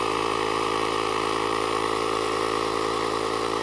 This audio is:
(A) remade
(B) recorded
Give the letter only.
A